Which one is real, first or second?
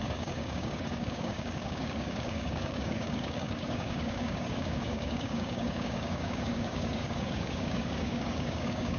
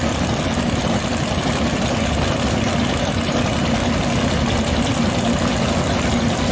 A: second